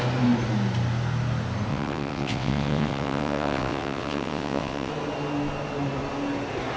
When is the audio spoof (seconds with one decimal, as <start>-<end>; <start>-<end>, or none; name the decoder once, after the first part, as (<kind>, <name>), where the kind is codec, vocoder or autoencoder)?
1.7-4.9 (vocoder, WaveNeXt)